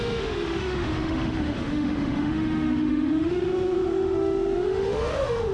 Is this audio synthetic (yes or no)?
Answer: yes